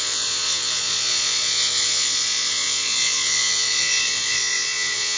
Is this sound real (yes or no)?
no